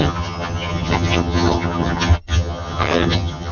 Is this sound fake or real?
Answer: fake